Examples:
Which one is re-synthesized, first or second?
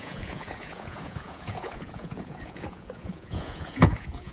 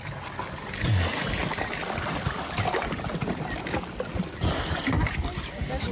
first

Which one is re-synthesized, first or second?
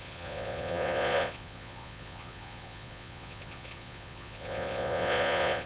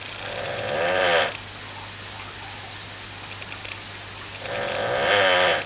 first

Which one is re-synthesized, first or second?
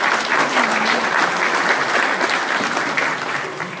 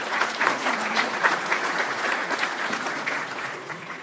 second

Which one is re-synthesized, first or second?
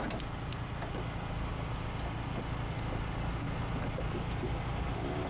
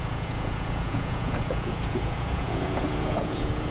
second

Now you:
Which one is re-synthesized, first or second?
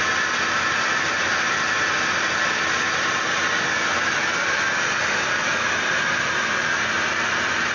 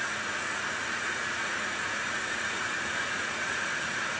second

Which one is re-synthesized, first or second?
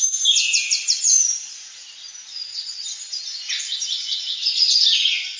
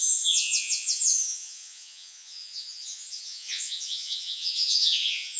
second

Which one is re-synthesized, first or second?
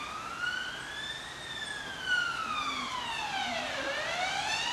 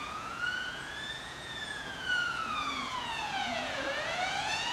second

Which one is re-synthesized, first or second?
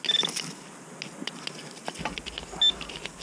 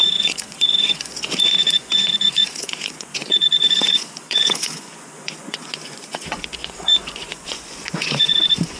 second